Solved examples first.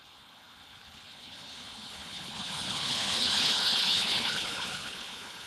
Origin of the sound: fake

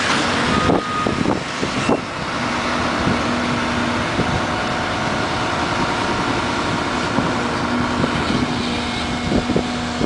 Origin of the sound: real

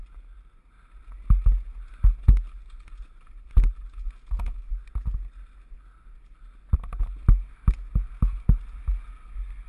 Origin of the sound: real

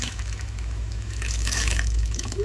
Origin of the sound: fake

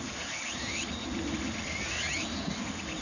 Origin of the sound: real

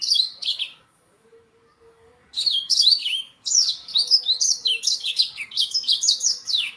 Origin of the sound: fake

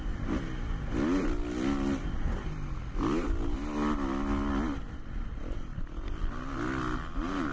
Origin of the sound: real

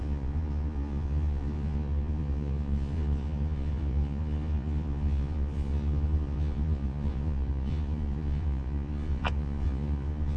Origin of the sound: fake